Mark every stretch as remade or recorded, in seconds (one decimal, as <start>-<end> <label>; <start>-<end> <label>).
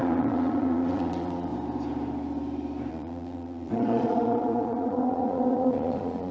0.0-1.5 remade; 1.5-2.9 recorded; 2.9-6.3 remade